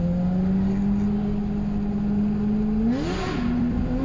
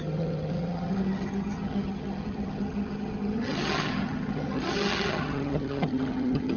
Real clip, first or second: first